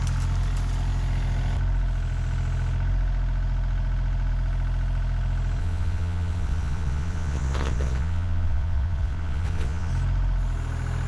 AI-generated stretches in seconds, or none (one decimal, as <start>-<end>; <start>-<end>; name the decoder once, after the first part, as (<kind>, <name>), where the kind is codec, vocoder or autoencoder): 5.6-9.9 (vocoder, Vocos)